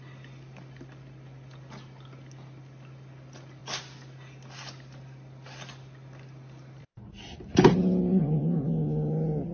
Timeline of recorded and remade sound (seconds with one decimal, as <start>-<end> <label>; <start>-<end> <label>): 0.0-9.5 recorded